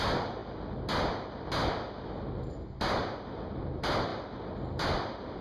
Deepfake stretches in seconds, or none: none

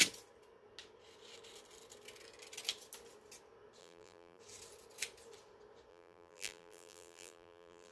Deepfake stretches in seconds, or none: 3.8-4.4 (vocoder, BigVGAN v2); 5.9-7.9

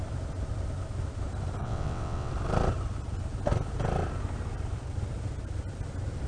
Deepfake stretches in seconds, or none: 1.6-2.3 (vocoder, WaveNeXt)

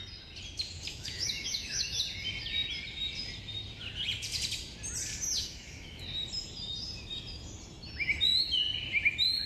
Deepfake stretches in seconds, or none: 0.9-2.0 (autoencoder, DAC-VAE); 5.4-6.0

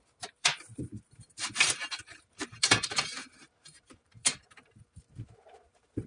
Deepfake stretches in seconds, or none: 0.0-6.1 (vocoder, BigVGAN v2)

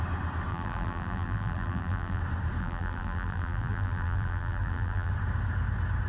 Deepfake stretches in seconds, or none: 0.5-2.2 (vocoder, BigVGAN v2); 2.6-5.1

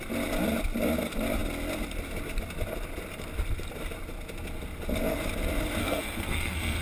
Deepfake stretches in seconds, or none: 5.8-6.8 (codec, SNAC)

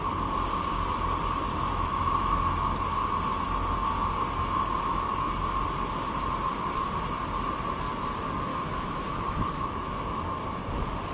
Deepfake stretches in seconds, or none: 1.7-2.4 (autoencoder, DAC-VAE); 8.5-10.6